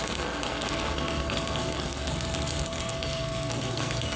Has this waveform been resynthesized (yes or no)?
yes